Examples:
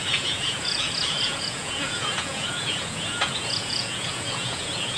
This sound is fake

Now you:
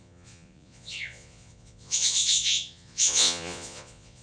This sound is fake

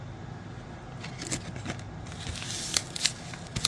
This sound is real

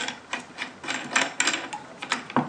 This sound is real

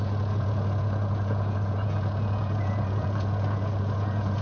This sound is fake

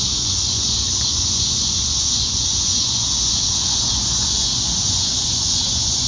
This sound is fake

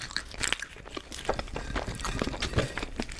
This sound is real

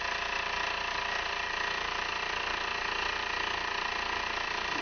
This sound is real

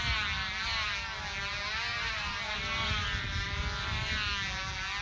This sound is real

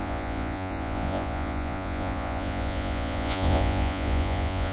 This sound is fake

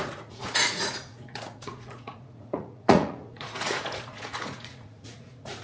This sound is fake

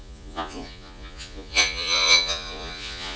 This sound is fake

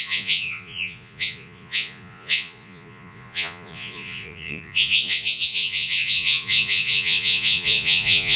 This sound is fake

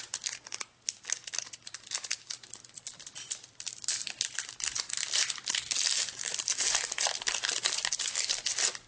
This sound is real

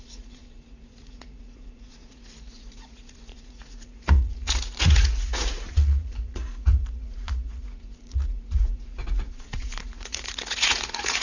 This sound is fake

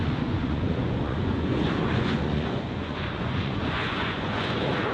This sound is fake